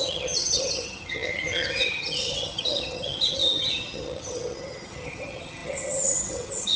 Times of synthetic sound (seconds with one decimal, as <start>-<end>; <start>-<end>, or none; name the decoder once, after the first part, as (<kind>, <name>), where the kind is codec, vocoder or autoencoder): 0.0-6.8 (vocoder, HiFi-GAN)